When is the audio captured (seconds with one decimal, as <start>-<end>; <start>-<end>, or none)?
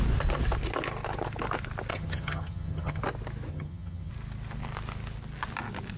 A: 0.0-1.9; 3.0-3.5; 4.1-6.0